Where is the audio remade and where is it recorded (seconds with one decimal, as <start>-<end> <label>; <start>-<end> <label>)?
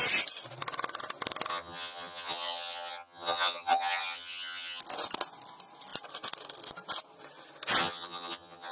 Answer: 0.0-1.5 recorded; 1.5-4.8 remade; 4.8-7.8 recorded; 7.8-8.7 remade